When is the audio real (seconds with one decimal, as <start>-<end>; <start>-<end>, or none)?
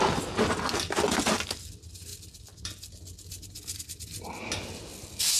0.0-5.4